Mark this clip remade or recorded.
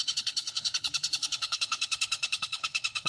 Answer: remade